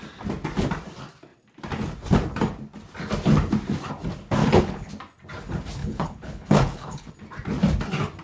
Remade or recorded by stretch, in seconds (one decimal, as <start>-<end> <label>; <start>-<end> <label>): 0.0-4.4 recorded; 4.4-4.9 remade; 4.9-5.8 recorded; 5.8-7.1 remade; 7.1-8.2 recorded